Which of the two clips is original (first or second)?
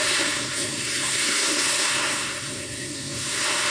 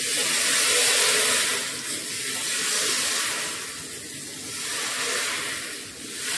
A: second